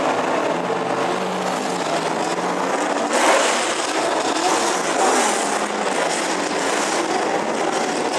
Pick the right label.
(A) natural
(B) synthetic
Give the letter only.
A